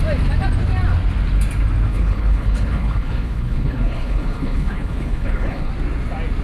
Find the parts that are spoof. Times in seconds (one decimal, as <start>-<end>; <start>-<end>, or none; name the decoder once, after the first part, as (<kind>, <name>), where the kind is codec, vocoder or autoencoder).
1.9-5.7 (codec, HILCodec)